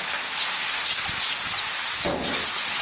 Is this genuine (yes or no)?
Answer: yes